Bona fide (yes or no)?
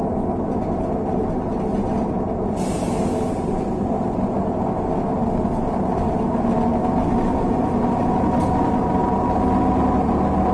yes